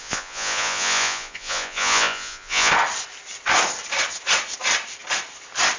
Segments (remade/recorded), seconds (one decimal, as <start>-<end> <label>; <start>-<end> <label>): 0.0-2.7 remade; 2.7-5.8 recorded